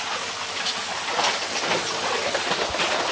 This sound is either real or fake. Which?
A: real